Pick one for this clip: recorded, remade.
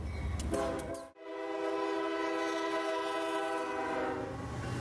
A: recorded